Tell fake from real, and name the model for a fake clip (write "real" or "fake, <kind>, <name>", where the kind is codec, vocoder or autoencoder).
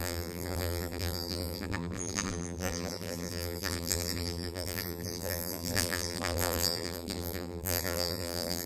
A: fake, vocoder, BigVGAN v2